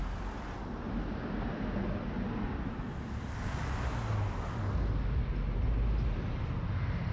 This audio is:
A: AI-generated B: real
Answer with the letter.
B